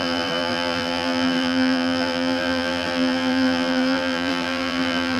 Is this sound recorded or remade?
remade